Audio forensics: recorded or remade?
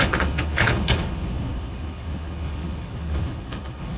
remade